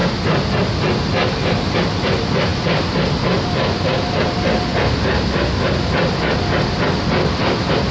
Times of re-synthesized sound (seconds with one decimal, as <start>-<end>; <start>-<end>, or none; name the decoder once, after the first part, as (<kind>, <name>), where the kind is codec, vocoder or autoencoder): none